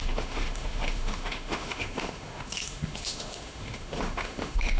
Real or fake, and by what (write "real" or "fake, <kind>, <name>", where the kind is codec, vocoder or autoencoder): fake, autoencoder, DAC-VAE